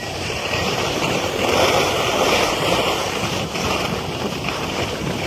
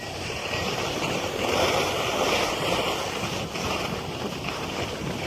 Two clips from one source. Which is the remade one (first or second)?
first